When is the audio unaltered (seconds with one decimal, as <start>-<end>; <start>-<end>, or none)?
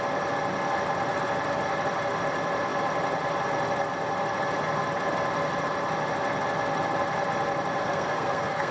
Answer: 0.0-7.8